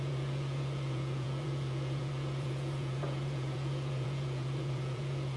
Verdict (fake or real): fake